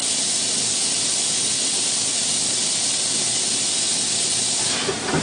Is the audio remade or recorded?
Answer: recorded